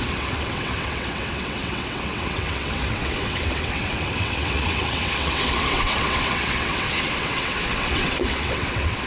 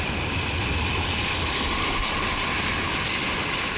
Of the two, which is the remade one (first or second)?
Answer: first